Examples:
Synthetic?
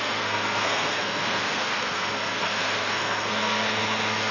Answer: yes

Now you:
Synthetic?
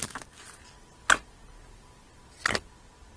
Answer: no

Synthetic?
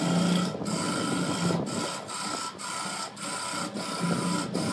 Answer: no